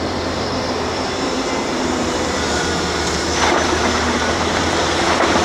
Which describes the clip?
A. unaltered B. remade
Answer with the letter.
B